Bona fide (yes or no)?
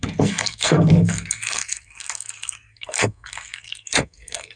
no